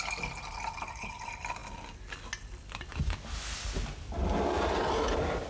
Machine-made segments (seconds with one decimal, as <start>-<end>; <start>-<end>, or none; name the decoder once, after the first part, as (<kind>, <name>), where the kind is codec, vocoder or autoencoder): none